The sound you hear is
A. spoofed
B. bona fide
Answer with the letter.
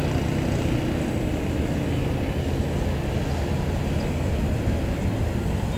B